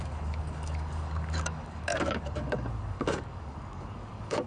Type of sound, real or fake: fake